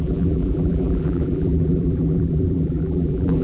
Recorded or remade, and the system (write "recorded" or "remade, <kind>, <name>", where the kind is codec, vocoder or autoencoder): remade, vocoder, BigVGAN v2